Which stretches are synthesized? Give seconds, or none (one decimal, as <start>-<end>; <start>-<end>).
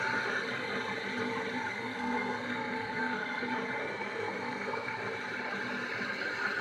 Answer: 1.7-3.4; 3.8-4.9